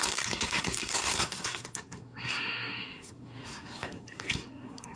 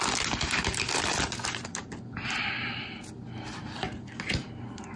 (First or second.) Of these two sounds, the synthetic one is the first